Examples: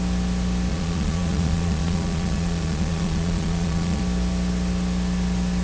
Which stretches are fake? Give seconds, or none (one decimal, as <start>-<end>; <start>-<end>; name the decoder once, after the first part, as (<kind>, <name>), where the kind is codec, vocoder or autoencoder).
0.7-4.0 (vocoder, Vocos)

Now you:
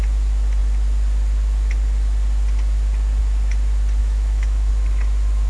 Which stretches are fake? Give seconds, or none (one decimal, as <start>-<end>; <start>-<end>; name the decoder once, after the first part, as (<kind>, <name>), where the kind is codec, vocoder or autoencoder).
4.0-4.7 (autoencoder, DAC-VAE)

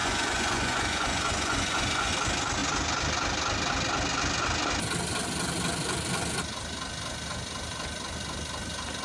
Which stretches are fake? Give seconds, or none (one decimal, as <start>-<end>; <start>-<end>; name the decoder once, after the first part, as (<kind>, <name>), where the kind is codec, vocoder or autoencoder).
0.0-2.1 (vocoder, Vocos)

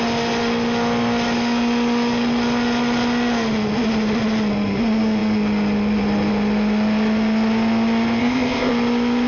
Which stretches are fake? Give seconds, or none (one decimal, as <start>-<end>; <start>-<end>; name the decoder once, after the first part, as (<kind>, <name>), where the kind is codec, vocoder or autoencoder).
8.2-8.7 (codec, ZipCodec)

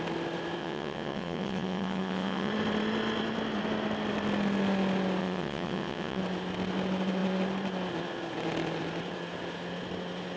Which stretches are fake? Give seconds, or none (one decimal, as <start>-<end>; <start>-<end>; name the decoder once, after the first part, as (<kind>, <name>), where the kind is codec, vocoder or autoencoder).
0.6-2.5 (vocoder, WaveNeXt); 5.2-6.2

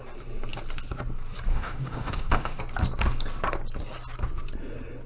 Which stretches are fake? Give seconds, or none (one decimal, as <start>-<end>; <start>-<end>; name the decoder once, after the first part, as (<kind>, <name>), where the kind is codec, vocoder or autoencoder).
1.5-2.6 (autoencoder, DAC-VAE)

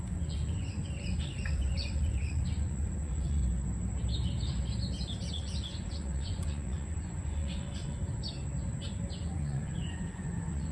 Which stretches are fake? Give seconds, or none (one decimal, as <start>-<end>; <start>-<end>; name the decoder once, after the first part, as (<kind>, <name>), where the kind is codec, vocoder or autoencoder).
0.0-3.4 (vocoder, Vocos); 5.3-8.0; 9.2-10.7

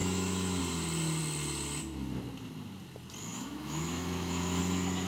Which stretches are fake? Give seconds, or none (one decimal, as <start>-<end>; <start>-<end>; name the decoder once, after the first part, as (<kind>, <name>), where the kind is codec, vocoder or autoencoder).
0.0-0.6 (autoencoder, DAC-VAE); 3.3-4.6